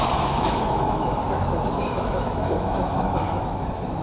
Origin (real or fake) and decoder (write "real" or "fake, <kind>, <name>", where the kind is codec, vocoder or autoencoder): fake, autoencoder, DAC-VAE